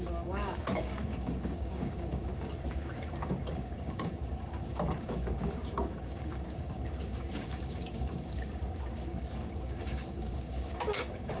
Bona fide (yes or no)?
no